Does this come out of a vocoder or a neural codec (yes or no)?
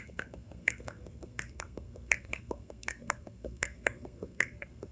yes